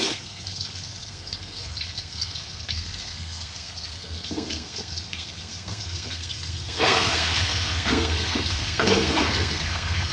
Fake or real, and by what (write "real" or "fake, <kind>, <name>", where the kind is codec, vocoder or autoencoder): fake, codec, SNAC